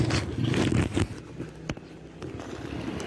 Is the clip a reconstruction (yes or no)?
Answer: no